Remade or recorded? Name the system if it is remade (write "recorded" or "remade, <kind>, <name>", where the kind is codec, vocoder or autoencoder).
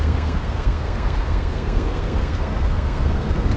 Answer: remade, codec, SNAC